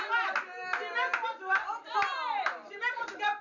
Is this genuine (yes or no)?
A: yes